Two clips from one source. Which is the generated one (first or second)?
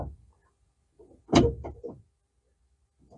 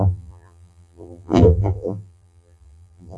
second